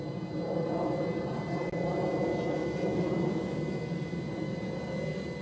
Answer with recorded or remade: recorded